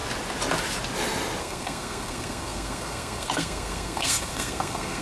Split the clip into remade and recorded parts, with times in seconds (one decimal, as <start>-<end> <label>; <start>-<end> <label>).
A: 0.0-1.4 recorded; 1.4-5.0 remade